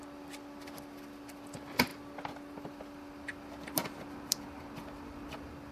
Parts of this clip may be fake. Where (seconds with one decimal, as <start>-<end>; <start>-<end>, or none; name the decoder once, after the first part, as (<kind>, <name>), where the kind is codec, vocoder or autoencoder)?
none